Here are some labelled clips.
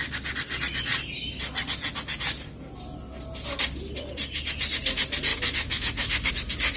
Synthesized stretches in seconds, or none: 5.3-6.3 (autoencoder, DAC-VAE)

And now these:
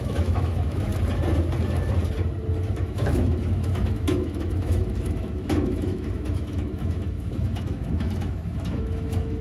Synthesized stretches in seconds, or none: 0.0-0.9 (autoencoder, DAC-VAE); 2.7-9.4

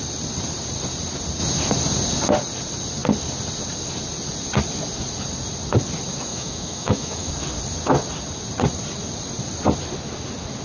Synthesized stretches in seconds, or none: 6.3-7.3 (autoencoder, DAC-VAE)

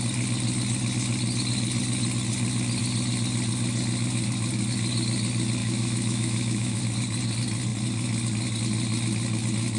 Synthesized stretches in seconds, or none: 5.6-6.8 (autoencoder, DAC-VAE)

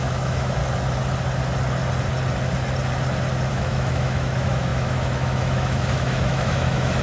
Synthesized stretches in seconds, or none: 0.0-0.6 (autoencoder, DAC-VAE); 3.5-7.0

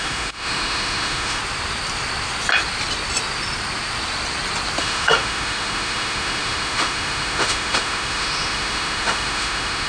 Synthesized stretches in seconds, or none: 0.0-1.4 (autoencoder, DAC-VAE); 4.8-9.9